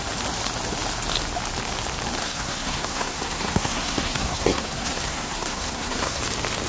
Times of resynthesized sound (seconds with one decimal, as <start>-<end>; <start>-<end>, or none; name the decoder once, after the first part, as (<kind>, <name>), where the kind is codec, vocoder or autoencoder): 2.2-6.2 (codec, SNAC)

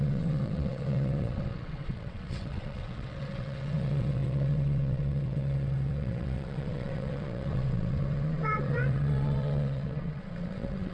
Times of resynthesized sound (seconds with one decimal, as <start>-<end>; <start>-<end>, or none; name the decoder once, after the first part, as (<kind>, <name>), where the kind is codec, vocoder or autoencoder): 0.0-10.9 (vocoder, WaveNeXt)

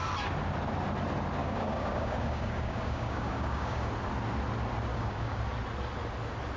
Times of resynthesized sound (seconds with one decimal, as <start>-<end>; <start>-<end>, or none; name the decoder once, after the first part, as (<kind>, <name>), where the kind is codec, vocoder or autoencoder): 1.4-3.9 (codec, DAC); 4.9-5.4

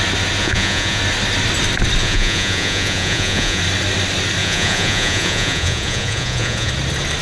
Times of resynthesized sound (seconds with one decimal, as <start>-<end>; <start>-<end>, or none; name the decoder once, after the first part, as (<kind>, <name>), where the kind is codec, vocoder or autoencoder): 0.4-1.0 (vocoder, Vocos); 2.0-3.6; 4.4-6.7

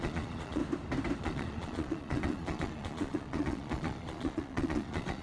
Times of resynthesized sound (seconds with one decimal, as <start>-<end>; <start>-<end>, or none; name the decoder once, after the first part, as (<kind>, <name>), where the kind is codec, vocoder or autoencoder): 0.0-0.6 (vocoder, Vocos); 1.2-5.2

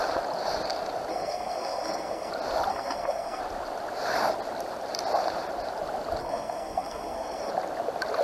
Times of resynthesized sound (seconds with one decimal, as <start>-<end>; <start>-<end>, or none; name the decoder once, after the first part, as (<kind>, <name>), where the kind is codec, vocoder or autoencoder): 1.1-2.3 (codec, SNAC); 2.7-3.4; 6.2-7.5

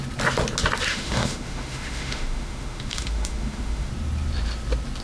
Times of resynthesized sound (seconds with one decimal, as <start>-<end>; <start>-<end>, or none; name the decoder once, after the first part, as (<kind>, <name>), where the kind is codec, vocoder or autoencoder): 0.9-3.9 (autoencoder, DAC-VAE)

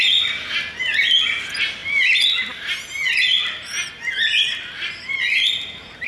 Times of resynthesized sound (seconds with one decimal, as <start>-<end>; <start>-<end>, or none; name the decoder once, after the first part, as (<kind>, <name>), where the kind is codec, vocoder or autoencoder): none